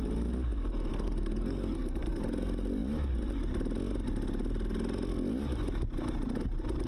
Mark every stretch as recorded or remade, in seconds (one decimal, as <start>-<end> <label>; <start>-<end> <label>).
0.0-0.9 recorded; 0.9-2.2 remade; 2.2-6.9 recorded